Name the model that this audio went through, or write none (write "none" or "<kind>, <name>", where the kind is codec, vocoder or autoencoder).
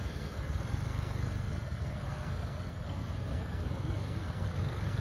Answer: codec, SNAC